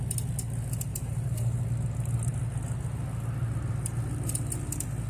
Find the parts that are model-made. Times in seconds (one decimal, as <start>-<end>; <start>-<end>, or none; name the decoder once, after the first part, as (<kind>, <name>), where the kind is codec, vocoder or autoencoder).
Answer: 0.9-1.6 (vocoder, BigVGAN v2)